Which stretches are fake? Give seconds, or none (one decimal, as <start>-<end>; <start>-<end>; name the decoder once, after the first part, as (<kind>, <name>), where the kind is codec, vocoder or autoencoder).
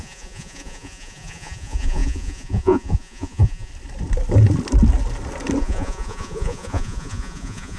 0.0-3.7 (vocoder, Vocos); 5.6-7.8